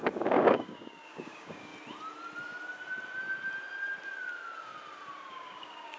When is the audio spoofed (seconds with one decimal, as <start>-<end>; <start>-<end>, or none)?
0.0-1.7; 5.3-6.0